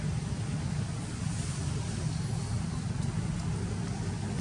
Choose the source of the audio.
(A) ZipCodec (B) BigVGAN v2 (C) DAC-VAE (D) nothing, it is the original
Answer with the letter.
D